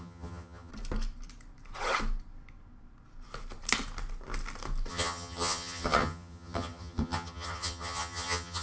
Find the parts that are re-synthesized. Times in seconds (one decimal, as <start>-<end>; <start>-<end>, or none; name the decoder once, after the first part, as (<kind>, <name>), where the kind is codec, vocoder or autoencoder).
0.0-0.7 (vocoder, HiFi-GAN); 4.9-8.6